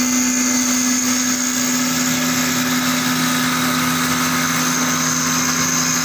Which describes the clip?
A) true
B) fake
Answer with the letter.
A